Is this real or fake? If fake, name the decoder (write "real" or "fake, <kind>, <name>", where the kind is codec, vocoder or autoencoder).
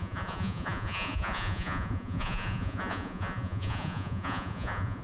fake, vocoder, Vocos